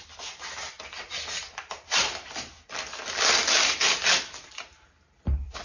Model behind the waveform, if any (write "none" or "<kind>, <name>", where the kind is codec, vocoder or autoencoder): none